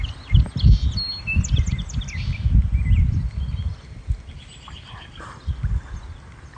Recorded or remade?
recorded